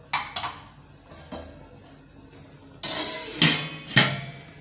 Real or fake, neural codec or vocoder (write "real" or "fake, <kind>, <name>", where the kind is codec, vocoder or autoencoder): real